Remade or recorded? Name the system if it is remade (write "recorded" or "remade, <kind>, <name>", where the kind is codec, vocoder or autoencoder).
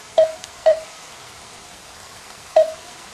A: remade, codec, SNAC